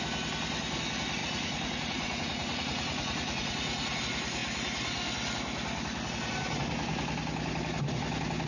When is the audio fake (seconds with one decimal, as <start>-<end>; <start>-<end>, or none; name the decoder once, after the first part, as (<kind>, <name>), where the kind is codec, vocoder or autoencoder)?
1.2-4.0 (vocoder, Vocos)